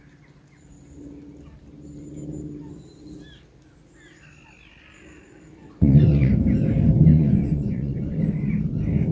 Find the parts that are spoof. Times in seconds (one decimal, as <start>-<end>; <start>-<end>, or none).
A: 5.6-6.3; 7.1-8.2